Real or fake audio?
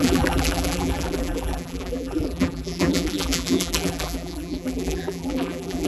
fake